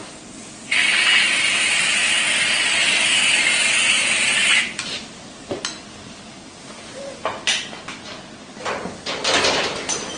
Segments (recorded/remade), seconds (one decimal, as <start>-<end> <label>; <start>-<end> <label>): 0.0-10.2 recorded